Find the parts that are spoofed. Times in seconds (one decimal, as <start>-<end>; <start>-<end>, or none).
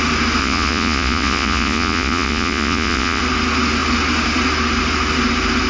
0.4-3.2